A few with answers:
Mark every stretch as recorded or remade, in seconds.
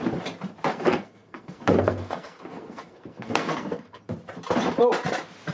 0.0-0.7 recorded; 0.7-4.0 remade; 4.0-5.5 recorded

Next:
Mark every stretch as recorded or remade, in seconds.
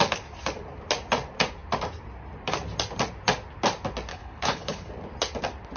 0.0-4.1 recorded; 4.1-4.9 remade; 4.9-5.8 recorded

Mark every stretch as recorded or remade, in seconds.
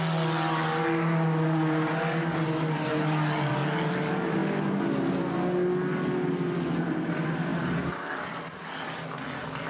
0.0-9.7 recorded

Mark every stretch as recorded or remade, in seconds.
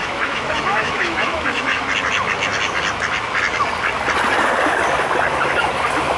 0.0-1.8 remade; 1.8-6.2 recorded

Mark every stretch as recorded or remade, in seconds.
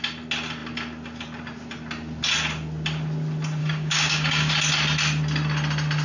0.0-3.6 recorded; 3.6-4.5 remade; 4.5-6.0 recorded